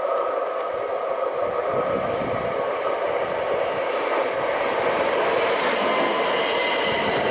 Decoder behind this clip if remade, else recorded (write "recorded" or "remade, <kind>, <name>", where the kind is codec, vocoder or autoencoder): recorded